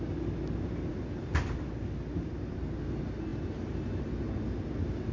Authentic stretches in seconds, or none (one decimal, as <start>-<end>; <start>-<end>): 0.0-5.1